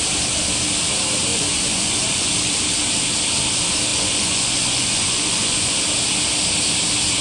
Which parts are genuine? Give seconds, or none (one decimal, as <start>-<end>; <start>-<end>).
0.0-1.3; 2.3-3.9; 5.8-7.2